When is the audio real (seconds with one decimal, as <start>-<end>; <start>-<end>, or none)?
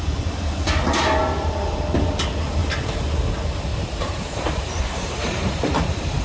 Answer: 0.0-2.6; 3.2-3.7; 5.5-6.2